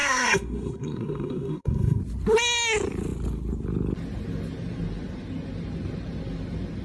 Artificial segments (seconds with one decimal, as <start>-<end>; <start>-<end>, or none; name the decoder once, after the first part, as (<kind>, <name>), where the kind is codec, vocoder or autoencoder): 0.0-2.0 (codec, SNAC)